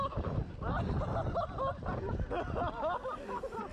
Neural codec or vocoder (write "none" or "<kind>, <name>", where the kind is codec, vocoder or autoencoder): none